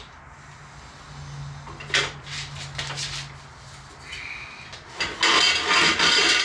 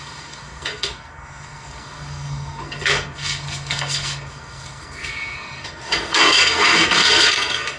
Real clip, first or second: first